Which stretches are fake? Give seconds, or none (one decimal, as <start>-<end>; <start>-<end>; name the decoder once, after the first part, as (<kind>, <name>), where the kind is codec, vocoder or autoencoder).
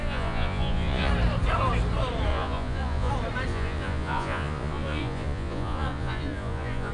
0.0-1.1 (vocoder, Vocos); 2.3-3.1; 3.5-6.9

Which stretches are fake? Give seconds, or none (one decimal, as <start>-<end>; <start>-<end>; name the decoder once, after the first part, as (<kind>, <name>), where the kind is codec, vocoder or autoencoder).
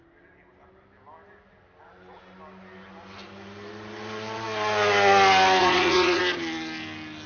5.6-6.2 (vocoder, Vocos)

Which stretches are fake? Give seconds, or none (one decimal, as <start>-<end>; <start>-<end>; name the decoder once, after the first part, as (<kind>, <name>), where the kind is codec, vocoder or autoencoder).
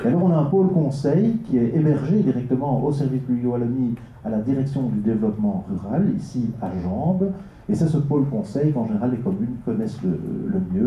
6.4-7.1 (vocoder, Vocos); 8.5-10.5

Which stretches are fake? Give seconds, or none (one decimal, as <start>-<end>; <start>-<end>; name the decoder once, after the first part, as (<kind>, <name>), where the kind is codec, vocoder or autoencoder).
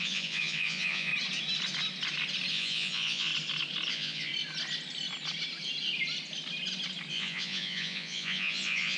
0.0-1.1 (vocoder, Vocos); 2.5-3.3; 3.9-4.3; 7.1-9.0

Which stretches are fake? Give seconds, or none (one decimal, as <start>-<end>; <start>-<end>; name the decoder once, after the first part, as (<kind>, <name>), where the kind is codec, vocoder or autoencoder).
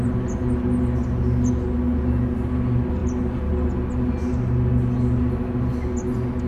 none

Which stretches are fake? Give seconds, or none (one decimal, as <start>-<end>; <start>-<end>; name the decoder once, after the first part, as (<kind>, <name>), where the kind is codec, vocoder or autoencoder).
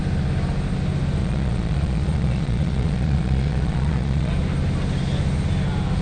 1.2-4.3 (vocoder, Vocos)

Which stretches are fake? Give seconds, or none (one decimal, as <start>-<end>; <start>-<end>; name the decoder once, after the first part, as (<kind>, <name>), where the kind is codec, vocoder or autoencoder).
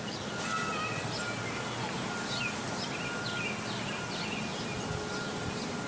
none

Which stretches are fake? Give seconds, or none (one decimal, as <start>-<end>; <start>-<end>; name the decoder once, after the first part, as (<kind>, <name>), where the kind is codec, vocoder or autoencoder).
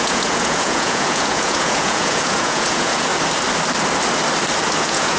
0.0-3.1 (vocoder, Vocos); 4.8-5.2